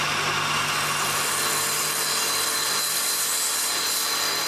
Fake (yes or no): no